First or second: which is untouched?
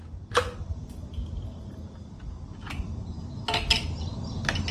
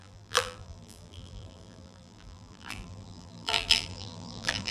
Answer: first